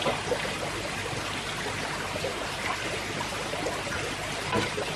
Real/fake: real